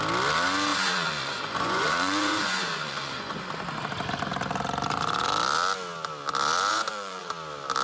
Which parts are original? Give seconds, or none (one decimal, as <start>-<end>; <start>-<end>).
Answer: 0.0-0.7; 3.4-6.7; 7.3-7.8